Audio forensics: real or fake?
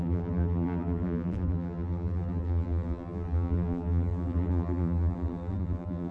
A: fake